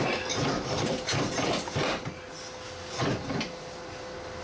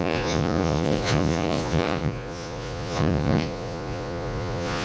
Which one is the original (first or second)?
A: first